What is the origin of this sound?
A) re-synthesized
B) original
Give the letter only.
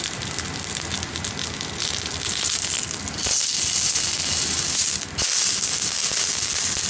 B